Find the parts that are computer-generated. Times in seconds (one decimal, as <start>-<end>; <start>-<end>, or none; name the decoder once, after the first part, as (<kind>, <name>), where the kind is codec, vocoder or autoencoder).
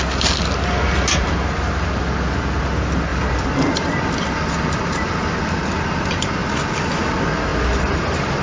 3.1-5.4 (vocoder, BigVGAN v2); 6.4-7.1; 7.5-8.4